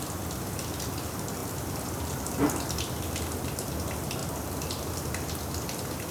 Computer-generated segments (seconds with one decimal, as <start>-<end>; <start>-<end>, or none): none